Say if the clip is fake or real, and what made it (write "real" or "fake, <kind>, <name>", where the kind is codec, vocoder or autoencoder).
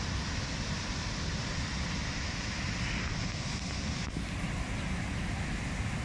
real